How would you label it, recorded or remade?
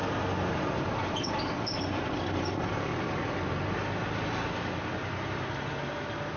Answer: recorded